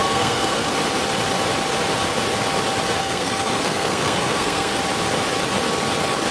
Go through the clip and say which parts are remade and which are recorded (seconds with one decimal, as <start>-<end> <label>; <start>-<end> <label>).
0.0-0.7 remade; 0.7-3.0 recorded; 3.0-4.8 remade; 4.8-6.3 recorded